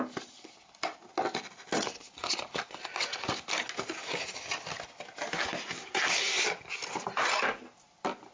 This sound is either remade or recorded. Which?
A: recorded